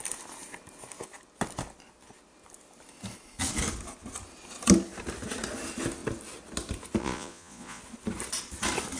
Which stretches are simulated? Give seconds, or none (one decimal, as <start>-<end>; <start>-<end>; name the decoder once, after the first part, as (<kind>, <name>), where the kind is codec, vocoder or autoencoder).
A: 7.0-7.8 (vocoder, Vocos)